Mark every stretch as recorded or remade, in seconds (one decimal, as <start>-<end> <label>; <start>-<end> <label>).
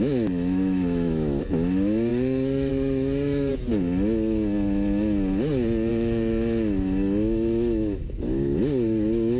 0.0-3.5 remade; 3.5-5.9 recorded; 5.9-9.4 remade